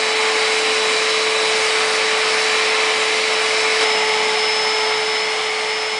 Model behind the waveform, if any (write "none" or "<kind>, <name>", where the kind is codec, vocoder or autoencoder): none